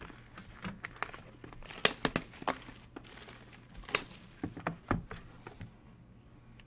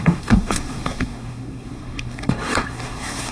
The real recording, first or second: first